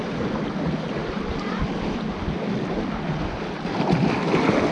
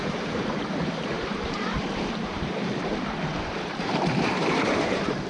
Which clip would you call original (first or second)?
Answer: first